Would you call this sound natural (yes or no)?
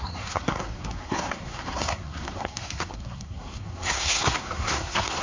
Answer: no